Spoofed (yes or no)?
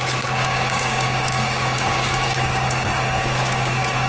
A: yes